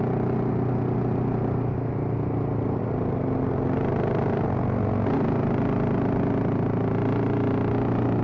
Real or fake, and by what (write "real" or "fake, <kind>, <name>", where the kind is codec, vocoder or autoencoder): real